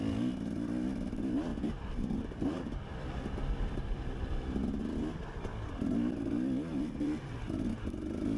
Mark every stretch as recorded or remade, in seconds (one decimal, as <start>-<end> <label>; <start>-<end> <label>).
0.0-1.5 recorded; 1.5-4.2 remade; 4.2-6.7 recorded; 6.7-8.4 remade